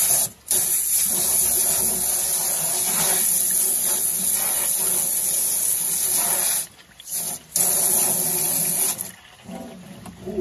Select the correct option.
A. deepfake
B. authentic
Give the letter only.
B